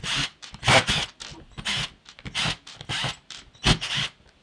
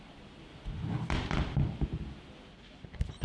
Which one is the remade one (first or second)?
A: second